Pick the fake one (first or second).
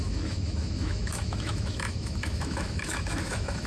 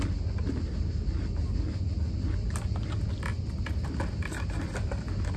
first